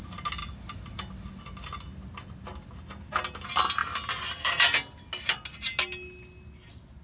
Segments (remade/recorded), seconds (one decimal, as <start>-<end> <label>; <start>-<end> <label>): 0.0-7.0 recorded